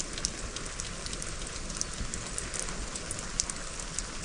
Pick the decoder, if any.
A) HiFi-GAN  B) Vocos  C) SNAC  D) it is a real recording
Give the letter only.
D